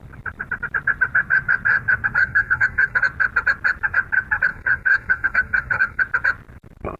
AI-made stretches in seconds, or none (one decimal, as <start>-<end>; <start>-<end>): 2.2-3.0; 4.5-6.0